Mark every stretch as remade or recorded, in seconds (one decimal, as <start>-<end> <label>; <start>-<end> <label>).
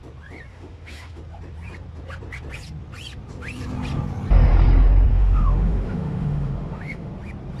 0.0-0.5 recorded; 0.5-1.2 remade; 1.2-5.1 recorded; 5.1-7.1 remade; 7.1-7.6 recorded